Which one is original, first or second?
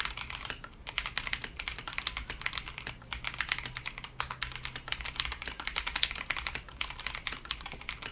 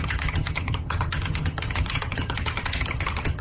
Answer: first